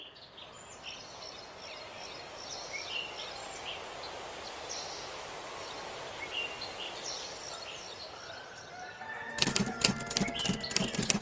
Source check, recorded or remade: recorded